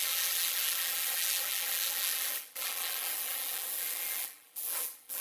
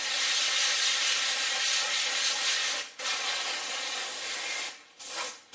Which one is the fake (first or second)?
first